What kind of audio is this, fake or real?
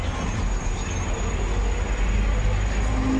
real